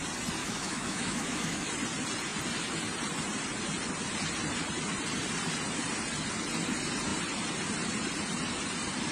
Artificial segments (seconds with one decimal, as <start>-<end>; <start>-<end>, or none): 0.4-1.7